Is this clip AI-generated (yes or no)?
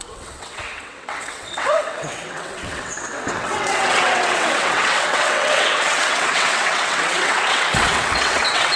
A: yes